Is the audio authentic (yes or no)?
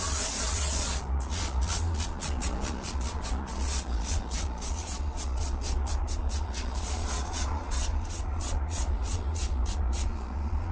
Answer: no